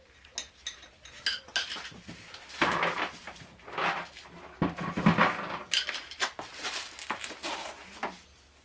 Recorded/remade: recorded